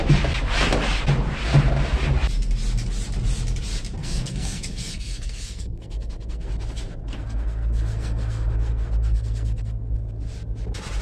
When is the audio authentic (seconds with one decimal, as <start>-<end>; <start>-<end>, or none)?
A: 0.0-4.0; 6.5-7.1; 9.9-11.0